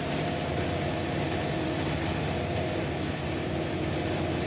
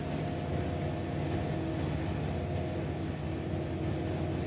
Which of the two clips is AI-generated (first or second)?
first